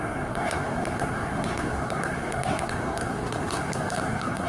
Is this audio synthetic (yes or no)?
yes